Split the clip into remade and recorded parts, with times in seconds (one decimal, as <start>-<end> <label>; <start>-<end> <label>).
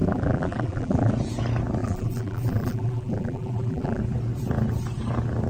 0.0-1.1 remade; 1.1-1.8 recorded; 1.8-4.0 remade; 4.0-5.5 recorded